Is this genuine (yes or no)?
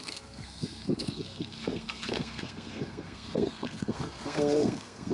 no